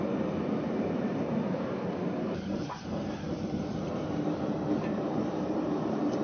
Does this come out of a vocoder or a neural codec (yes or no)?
yes